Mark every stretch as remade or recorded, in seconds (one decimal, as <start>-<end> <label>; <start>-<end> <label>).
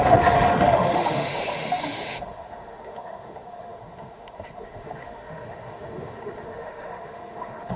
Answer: 0.0-7.8 remade